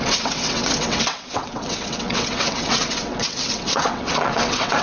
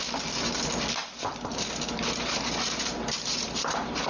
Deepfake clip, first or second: first